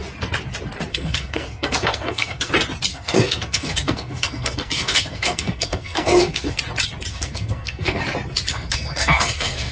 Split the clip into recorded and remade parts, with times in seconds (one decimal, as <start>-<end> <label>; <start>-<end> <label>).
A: 0.0-0.9 recorded; 0.9-2.5 remade; 2.5-2.9 recorded; 2.9-6.6 remade; 6.6-7.1 recorded; 7.1-8.0 remade; 8.0-8.5 recorded; 8.5-9.7 remade